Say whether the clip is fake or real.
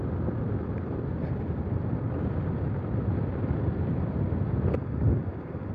real